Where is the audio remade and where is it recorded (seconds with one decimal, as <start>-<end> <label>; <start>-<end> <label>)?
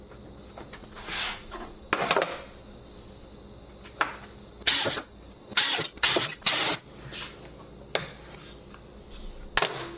0.0-0.7 recorded; 0.7-1.8 remade; 1.8-10.0 recorded